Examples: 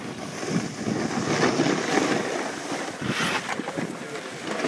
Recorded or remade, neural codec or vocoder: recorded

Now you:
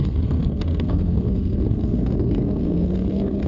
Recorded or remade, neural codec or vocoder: remade, codec, SNAC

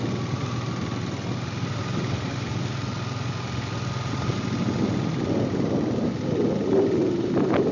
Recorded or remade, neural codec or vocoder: recorded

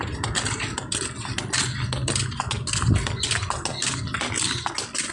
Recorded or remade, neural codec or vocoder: recorded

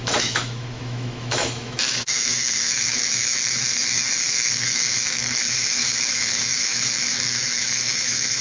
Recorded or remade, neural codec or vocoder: remade, autoencoder, DAC-VAE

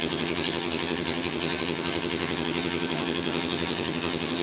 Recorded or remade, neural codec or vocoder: remade, vocoder, HiFi-GAN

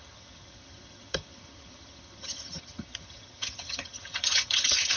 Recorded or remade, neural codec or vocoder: remade, vocoder, HiFi-GAN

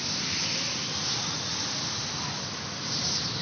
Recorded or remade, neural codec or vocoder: recorded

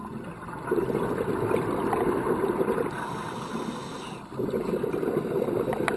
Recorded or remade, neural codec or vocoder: recorded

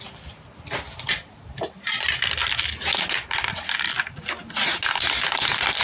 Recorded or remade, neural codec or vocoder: recorded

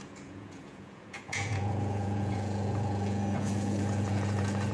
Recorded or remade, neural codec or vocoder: remade, vocoder, Vocos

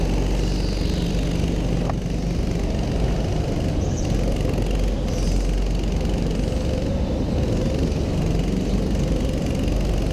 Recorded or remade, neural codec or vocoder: recorded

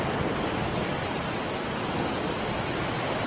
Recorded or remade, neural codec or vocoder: recorded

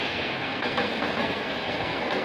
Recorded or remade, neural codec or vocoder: remade, codec, SNAC